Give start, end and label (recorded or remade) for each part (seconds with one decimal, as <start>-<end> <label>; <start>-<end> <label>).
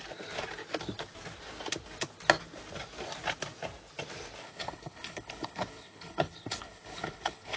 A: 0.0-4.4 recorded; 4.4-7.6 remade